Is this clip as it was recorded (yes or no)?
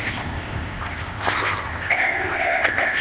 no